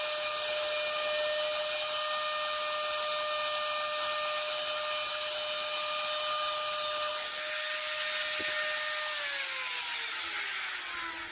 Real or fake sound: real